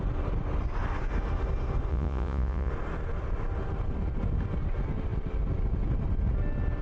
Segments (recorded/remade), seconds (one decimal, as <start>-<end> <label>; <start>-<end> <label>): 0.0-1.9 recorded; 1.9-2.7 remade; 2.7-6.8 recorded